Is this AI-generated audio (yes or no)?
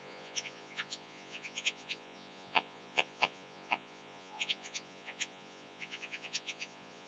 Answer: yes